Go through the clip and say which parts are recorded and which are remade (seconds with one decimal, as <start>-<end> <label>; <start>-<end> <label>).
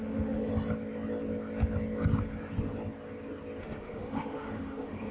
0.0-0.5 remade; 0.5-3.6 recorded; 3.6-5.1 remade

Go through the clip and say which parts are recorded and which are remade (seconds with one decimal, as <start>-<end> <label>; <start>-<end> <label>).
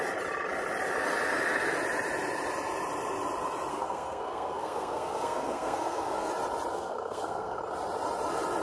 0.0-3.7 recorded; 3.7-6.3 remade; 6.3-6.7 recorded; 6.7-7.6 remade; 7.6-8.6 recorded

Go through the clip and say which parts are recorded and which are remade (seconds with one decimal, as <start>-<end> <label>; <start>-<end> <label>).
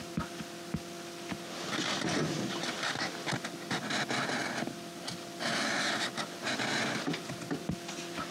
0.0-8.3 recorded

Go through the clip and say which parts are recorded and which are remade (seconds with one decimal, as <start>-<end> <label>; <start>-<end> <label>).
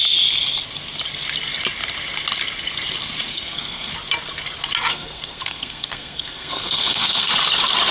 0.0-3.3 recorded; 3.3-3.9 remade; 3.9-4.9 recorded; 4.9-7.3 remade; 7.3-7.9 recorded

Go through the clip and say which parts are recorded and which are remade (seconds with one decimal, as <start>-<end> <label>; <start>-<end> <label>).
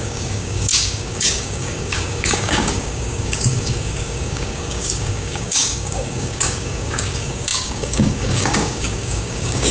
0.0-9.7 remade